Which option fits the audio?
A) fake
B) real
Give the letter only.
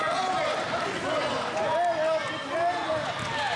B